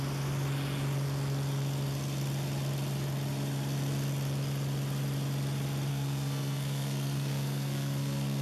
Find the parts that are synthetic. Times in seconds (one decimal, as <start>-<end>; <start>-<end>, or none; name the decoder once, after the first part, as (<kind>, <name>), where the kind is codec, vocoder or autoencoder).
5.9-8.4 (codec, SNAC)